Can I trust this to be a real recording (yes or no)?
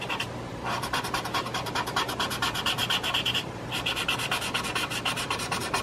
no